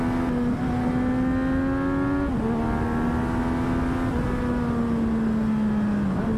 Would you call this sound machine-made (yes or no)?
no